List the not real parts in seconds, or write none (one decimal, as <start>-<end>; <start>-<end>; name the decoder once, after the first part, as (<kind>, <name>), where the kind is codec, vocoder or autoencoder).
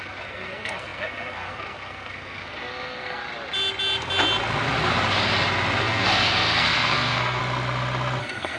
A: 0.0-3.2 (codec, SNAC); 5.8-7.4; 8.2-8.6